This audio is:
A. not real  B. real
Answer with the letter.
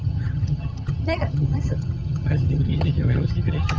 A